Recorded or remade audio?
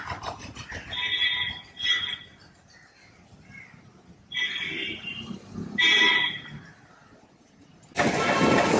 recorded